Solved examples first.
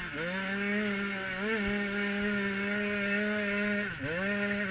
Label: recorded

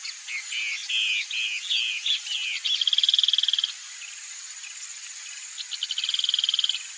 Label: recorded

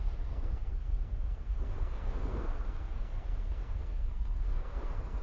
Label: remade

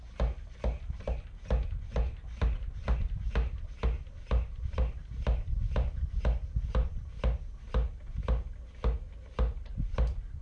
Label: recorded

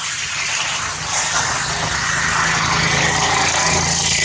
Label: recorded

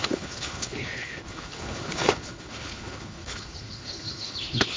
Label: remade